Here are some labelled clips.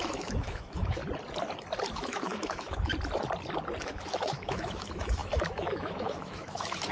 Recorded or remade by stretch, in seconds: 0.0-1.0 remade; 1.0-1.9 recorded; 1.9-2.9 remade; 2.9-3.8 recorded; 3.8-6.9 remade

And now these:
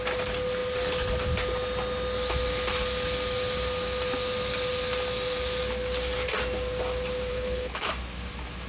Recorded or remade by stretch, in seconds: 0.0-7.3 recorded; 7.3-7.9 remade; 7.9-8.7 recorded

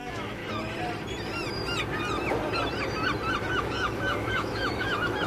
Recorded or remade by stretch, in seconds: 0.0-0.4 remade; 0.4-3.5 recorded; 3.5-5.3 remade

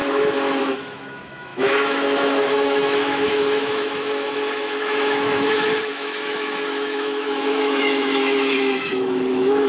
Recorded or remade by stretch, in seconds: 0.0-0.6 recorded; 0.6-9.7 remade

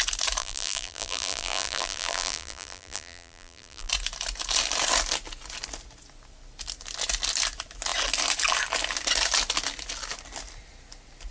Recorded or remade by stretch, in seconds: 0.0-0.4 recorded; 0.4-3.9 remade; 3.9-11.3 recorded

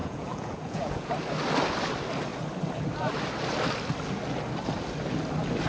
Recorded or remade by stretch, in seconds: 0.0-1.1 remade; 1.1-5.7 recorded

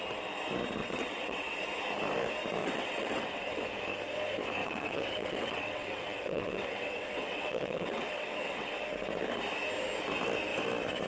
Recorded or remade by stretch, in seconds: 0.0-0.8 recorded; 0.8-1.6 remade; 1.6-2.6 recorded; 2.6-3.6 remade; 3.6-4.6 recorded; 4.6-8.7 remade; 8.7-11.1 recorded

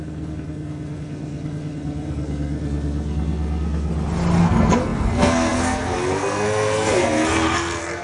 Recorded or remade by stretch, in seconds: 0.0-3.9 remade; 3.9-4.4 recorded; 4.4-8.0 remade